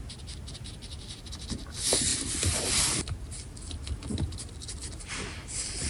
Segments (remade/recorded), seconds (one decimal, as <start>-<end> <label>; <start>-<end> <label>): 0.0-5.9 recorded